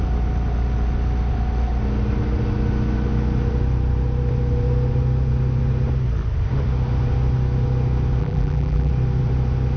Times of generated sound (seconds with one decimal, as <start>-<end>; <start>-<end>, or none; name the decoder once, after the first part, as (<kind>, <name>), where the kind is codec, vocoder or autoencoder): 8.2-8.9 (vocoder, BigVGAN v2)